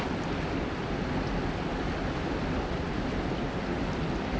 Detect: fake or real real